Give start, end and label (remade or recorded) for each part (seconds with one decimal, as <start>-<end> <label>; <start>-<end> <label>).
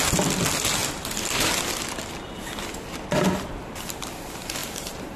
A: 0.0-4.6 recorded; 4.6-5.2 remade